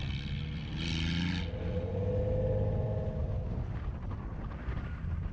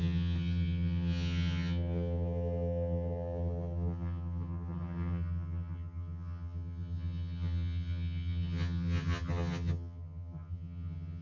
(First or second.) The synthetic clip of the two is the second